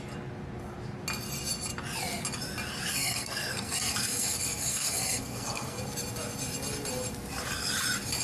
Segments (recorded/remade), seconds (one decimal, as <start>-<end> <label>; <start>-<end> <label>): 0.0-2.9 recorded; 2.9-5.8 remade; 5.8-8.2 recorded